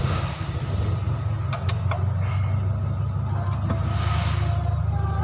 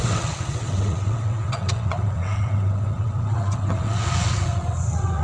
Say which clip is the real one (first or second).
first